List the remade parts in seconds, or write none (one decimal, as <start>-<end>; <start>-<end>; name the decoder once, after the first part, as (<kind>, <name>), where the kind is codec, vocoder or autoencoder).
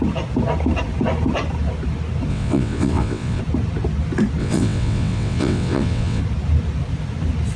2.3-3.4 (vocoder, WaveNeXt); 4.4-6.2